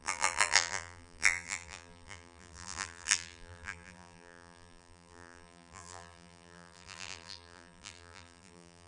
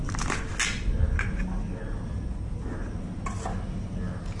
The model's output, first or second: first